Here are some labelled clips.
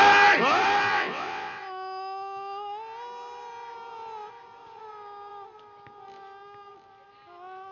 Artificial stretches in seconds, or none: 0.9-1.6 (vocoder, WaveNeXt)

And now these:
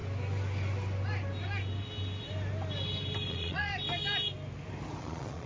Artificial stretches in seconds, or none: 3.3-3.7 (vocoder, Vocos); 5.0-5.5

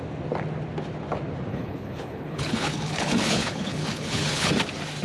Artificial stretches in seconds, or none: 1.5-4.5 (codec, HILCodec)

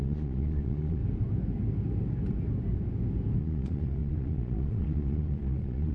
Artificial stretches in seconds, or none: 0.0-1.0 (vocoder, Vocos); 3.4-5.9

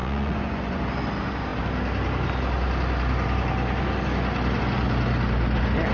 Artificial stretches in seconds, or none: 0.0-0.8 (vocoder, Vocos)

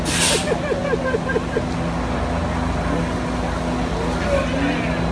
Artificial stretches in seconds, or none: none

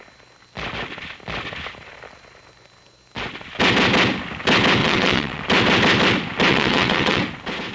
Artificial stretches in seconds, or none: 4.8-5.4 (vocoder, WaveNeXt); 6.5-7.2